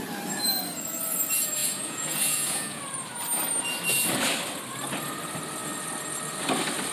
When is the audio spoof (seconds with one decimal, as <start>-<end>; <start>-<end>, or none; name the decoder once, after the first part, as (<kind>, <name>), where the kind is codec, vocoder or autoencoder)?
1.6-2.8 (vocoder, Vocos)